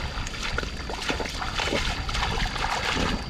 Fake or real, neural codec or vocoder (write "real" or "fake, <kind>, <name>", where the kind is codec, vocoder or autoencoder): real